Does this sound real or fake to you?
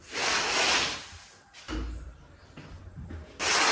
real